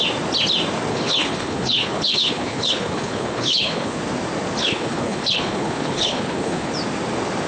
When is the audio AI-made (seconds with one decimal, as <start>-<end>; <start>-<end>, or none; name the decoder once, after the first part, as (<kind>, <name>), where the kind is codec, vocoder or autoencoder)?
0.9-4.0 (codec, HILCodec); 4.6-6.7